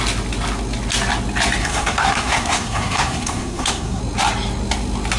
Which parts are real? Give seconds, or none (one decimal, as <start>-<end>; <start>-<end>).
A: 0.0-1.6; 4.0-5.2